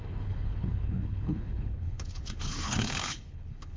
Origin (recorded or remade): remade